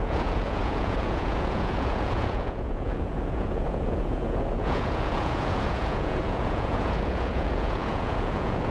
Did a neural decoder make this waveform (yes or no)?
yes